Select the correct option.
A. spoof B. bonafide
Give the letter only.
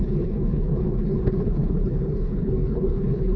A